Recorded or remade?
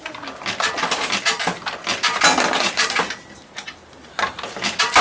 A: recorded